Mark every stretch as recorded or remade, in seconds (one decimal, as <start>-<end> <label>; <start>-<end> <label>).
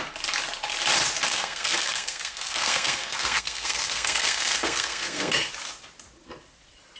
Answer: 0.0-1.3 recorded; 1.3-5.5 remade; 5.5-7.0 recorded